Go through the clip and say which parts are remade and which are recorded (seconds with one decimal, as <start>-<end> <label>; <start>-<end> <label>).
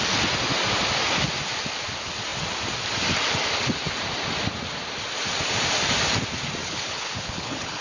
0.0-6.6 recorded; 6.6-7.8 remade